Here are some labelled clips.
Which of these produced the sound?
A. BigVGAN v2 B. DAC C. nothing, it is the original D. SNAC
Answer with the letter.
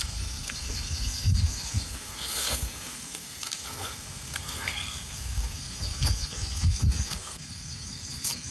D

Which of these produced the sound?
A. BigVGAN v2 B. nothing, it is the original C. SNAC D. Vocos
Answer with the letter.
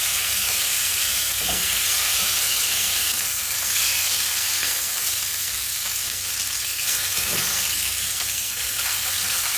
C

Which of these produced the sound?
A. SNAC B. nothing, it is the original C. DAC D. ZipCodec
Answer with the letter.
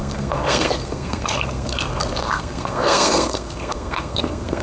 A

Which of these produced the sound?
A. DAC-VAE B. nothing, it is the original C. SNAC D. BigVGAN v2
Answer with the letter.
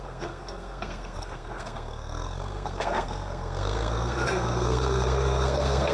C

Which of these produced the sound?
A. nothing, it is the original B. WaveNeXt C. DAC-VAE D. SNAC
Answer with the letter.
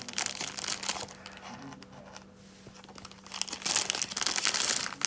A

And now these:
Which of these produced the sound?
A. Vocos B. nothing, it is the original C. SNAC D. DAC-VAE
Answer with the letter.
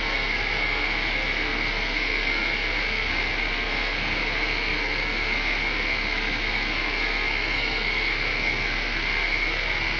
C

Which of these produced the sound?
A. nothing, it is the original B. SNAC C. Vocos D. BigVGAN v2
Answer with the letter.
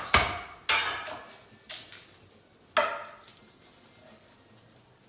A